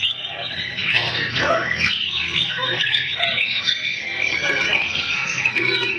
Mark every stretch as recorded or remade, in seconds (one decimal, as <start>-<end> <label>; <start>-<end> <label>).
0.0-6.0 remade